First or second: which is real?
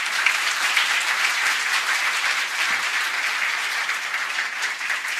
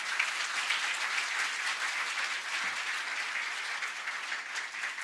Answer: second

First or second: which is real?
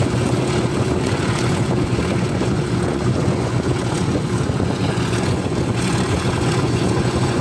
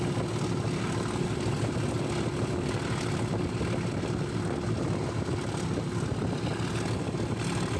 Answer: second